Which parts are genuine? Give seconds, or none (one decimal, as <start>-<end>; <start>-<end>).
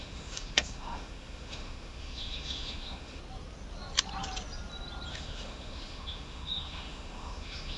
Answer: 3.2-5.1